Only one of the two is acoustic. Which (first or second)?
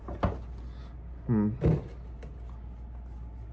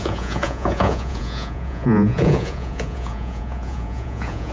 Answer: first